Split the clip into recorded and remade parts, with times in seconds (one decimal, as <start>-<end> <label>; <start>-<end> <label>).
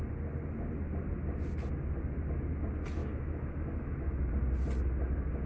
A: 0.0-3.0 recorded; 3.0-4.3 remade; 4.3-5.5 recorded